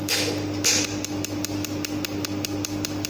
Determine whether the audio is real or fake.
real